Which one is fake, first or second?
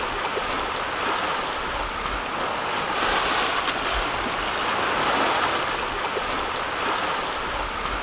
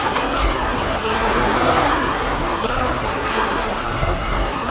second